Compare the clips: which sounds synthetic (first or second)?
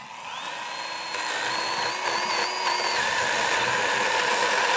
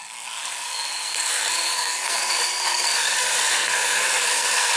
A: second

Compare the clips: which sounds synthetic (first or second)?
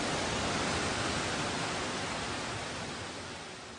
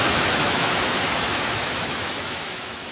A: second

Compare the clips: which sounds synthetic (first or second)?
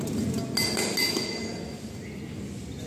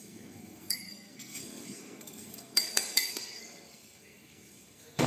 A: second